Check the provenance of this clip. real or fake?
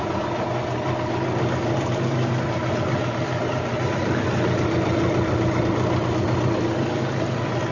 real